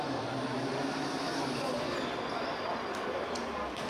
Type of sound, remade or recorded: recorded